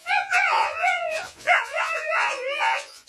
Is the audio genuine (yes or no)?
no